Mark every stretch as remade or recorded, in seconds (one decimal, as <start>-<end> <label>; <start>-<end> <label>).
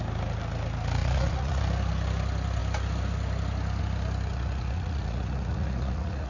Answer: 0.0-1.0 recorded; 1.0-1.6 remade; 1.6-4.3 recorded; 4.3-6.3 remade